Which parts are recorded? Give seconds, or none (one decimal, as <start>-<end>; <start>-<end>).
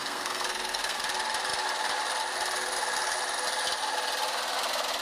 1.0-5.0